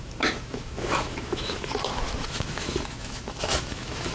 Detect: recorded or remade remade